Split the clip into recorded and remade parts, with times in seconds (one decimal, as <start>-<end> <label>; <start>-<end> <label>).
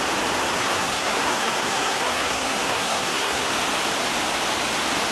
0.0-0.6 recorded; 0.6-3.5 remade; 3.5-5.1 recorded